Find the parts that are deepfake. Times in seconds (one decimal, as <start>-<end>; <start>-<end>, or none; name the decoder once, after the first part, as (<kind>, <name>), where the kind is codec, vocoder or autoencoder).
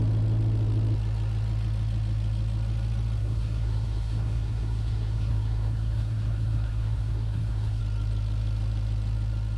3.2-7.8 (codec, SNAC)